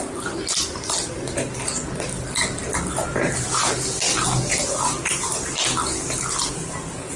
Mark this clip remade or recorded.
recorded